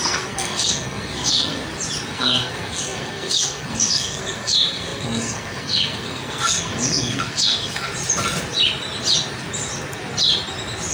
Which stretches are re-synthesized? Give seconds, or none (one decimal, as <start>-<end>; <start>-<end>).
0.0-1.6; 2.1-7.9